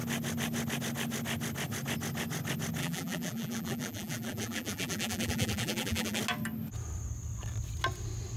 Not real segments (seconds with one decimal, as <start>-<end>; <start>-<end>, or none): 2.8-6.2

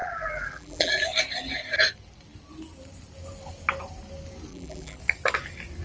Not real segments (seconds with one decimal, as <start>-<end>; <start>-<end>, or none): 0.0-0.9; 4.5-5.0

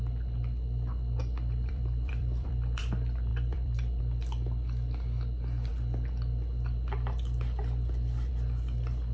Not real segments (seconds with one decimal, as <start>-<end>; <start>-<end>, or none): 1.2-2.8; 3.3-4.0